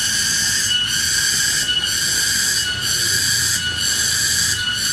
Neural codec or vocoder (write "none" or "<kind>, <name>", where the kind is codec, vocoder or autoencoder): none